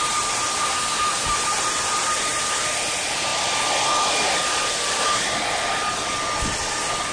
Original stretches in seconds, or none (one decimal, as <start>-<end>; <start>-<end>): 2.3-2.8; 3.3-5.5